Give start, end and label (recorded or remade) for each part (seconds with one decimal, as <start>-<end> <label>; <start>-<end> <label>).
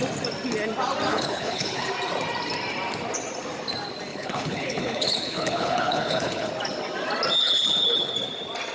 0.0-1.1 recorded; 1.1-1.9 remade; 1.9-4.1 recorded; 4.1-6.5 remade; 6.5-7.4 recorded; 7.4-8.1 remade; 8.1-8.7 recorded